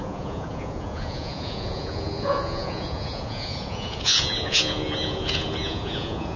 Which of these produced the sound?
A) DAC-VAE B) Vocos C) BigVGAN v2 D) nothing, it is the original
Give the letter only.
B